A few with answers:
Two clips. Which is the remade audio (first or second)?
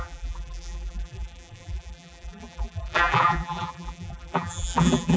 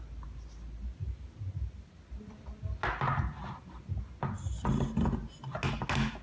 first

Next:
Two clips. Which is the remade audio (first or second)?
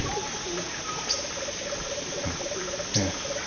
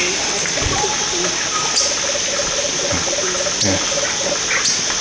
first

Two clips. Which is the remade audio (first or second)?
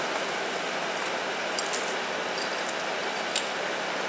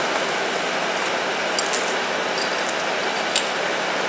first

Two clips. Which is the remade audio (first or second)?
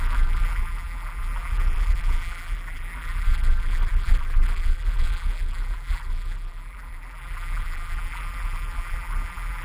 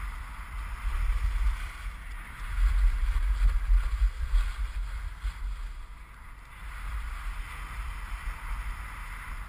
first